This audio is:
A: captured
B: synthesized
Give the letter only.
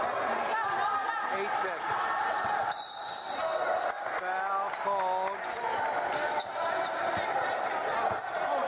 A